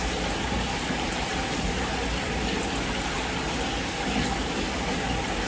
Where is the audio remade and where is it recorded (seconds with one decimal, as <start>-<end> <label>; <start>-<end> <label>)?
0.0-5.5 recorded